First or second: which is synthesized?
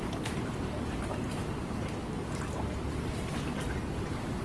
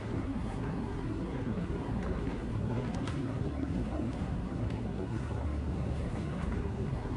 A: second